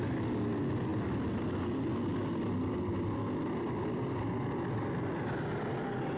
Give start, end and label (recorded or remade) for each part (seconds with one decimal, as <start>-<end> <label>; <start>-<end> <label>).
0.0-6.2 recorded